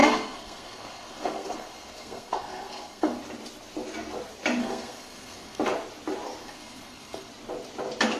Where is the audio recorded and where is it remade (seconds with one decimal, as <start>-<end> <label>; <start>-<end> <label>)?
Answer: 0.0-3.2 remade; 3.2-4.6 recorded; 4.6-5.6 remade; 5.6-6.4 recorded; 6.4-7.3 remade; 7.3-8.2 recorded